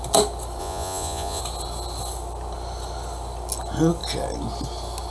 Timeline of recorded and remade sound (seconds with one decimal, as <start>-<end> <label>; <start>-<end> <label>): 0.0-0.6 recorded; 0.6-1.4 remade; 1.4-5.1 recorded